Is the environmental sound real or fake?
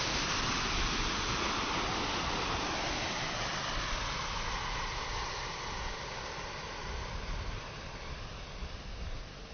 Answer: real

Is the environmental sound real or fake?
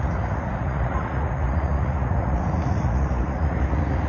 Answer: fake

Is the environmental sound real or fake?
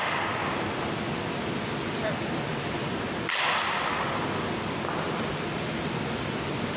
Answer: real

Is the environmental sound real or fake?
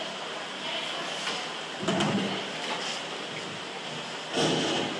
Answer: real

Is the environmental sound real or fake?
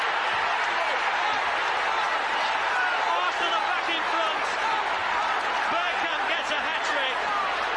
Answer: real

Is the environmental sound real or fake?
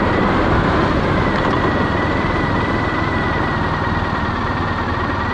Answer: real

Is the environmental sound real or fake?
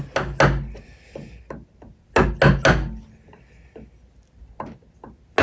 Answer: real